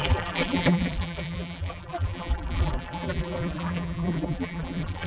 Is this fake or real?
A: fake